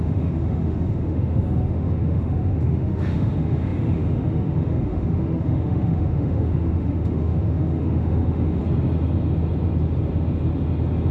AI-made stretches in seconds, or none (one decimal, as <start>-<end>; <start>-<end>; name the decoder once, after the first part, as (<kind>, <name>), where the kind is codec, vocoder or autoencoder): 0.0-8.6 (autoencoder, DAC-VAE)